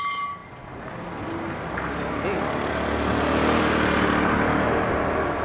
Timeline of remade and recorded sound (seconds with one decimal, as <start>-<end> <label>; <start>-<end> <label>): 0.0-5.4 recorded